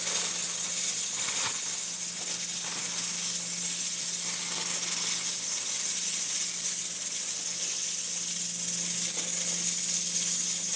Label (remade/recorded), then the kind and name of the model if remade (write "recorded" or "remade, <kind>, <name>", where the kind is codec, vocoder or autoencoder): recorded